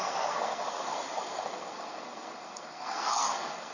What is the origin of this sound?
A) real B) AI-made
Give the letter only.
B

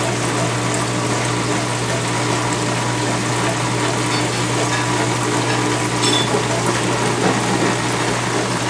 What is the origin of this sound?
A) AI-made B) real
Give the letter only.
B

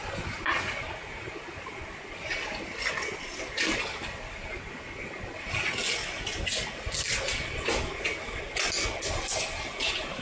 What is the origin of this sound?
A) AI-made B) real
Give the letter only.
B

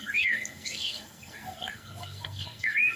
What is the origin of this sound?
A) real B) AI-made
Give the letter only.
B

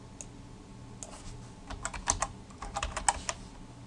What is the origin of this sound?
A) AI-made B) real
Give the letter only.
B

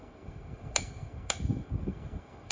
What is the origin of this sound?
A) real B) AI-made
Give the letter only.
B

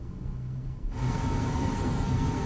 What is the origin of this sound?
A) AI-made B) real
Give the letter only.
A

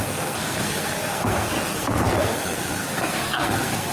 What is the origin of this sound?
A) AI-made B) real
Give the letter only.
A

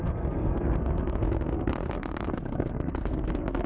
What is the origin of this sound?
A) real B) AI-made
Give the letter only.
B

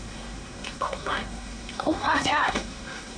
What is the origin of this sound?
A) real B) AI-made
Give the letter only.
B